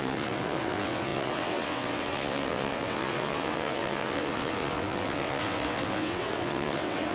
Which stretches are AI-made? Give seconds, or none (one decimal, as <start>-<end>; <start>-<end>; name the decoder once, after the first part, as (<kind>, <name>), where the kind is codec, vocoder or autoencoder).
0.0-7.1 (vocoder, WaveNeXt)